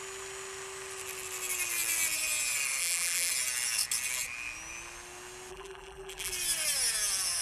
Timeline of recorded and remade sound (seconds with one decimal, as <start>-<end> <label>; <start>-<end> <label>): 0.0-2.8 recorded; 2.8-3.3 remade; 3.3-5.5 recorded; 5.5-6.3 remade; 6.3-7.4 recorded